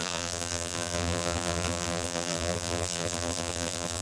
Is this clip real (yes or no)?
no